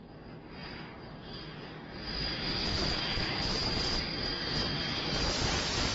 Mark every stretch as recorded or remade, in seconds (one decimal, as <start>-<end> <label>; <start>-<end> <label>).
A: 0.0-2.6 recorded; 2.6-3.7 remade; 3.7-5.9 recorded